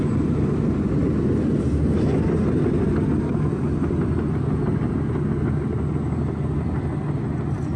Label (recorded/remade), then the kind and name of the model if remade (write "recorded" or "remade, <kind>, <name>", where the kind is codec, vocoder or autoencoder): recorded